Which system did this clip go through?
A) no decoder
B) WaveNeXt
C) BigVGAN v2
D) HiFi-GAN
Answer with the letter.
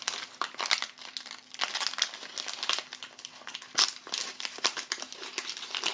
A